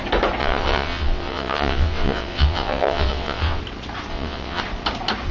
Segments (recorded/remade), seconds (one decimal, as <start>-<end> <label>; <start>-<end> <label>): 0.0-0.4 recorded; 0.4-3.6 remade; 3.6-4.1 recorded; 4.1-4.6 remade; 4.6-5.3 recorded